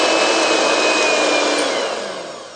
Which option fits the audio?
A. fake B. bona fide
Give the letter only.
B